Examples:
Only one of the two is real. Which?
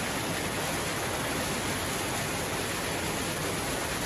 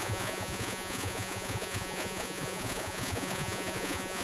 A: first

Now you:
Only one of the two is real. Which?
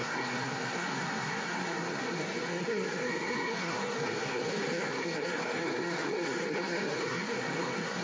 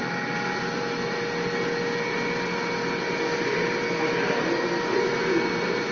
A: second